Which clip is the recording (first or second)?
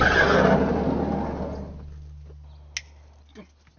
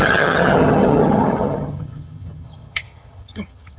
first